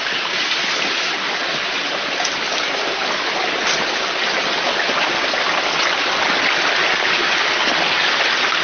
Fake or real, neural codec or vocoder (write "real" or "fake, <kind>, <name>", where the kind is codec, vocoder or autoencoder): real